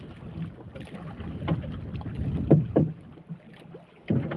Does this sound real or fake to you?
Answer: real